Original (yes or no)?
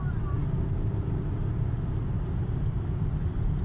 yes